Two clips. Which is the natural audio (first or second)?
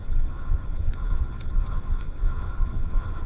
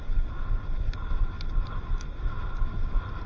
second